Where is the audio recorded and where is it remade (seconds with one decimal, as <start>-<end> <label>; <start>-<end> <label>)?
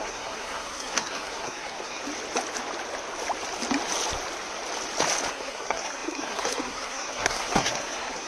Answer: 0.0-2.0 remade; 2.0-5.3 recorded; 5.3-8.3 remade